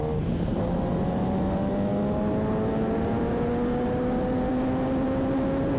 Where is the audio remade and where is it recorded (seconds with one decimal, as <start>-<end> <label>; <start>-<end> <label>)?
0.0-0.5 recorded; 0.5-1.7 remade; 1.7-2.7 recorded; 2.7-3.5 remade; 3.5-5.8 recorded